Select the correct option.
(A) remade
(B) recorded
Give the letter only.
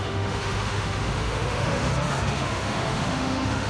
A